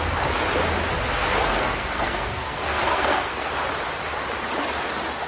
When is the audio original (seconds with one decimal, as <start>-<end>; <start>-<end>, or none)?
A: 0.0-1.5; 3.5-5.3